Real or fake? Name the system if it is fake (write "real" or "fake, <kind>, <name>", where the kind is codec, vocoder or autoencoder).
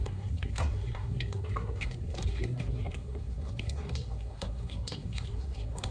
fake, codec, SNAC